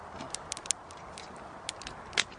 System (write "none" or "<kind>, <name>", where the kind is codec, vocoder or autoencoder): none